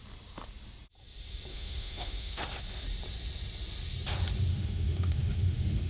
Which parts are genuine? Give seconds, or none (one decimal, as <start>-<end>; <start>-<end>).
0.0-1.5; 2.4-4.5